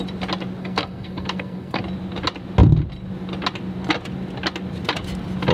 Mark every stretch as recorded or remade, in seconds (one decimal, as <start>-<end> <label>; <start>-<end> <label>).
0.0-0.6 recorded; 0.6-1.8 remade; 1.8-5.5 recorded